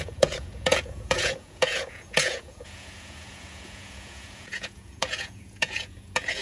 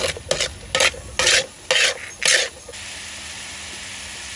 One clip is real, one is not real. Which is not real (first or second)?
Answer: first